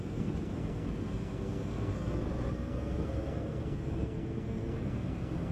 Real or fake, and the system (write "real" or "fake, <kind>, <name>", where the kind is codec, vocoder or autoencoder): fake, codec, SNAC